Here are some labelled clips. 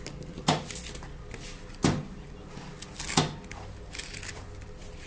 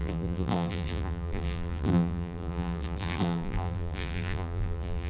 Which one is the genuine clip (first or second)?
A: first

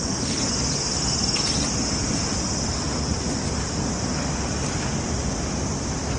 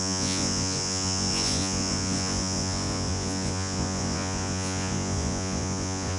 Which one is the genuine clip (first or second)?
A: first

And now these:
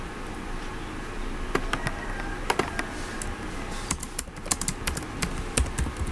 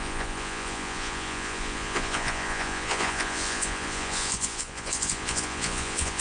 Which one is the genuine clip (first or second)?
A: first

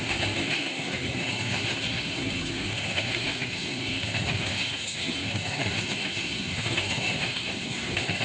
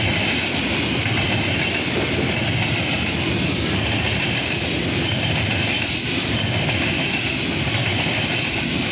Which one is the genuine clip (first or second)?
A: second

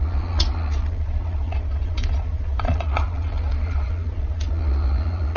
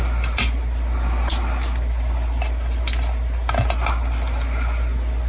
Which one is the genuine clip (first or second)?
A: second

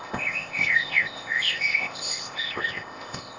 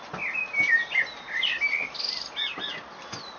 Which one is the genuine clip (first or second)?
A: second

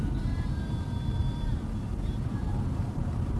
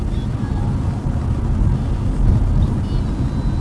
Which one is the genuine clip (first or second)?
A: second